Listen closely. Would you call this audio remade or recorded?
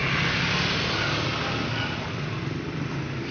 recorded